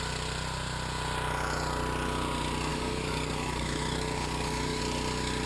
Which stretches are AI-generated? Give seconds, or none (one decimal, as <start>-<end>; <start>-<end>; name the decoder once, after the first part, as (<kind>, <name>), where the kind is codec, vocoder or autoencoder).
2.7-4.8 (codec, DAC)